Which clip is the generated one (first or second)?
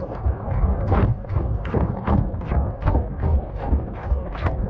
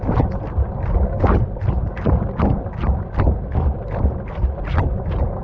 first